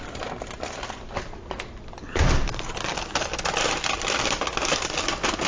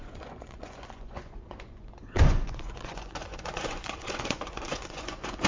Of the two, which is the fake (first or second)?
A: second